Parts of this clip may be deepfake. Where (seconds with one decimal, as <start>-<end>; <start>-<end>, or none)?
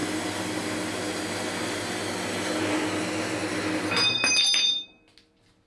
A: none